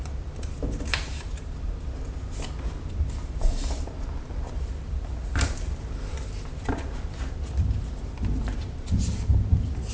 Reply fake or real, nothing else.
real